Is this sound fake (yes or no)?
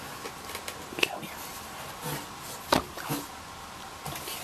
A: no